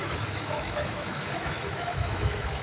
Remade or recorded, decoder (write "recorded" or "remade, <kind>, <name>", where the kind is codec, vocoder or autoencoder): remade, autoencoder, DAC-VAE